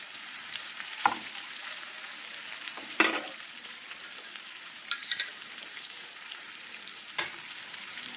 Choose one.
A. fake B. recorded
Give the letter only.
A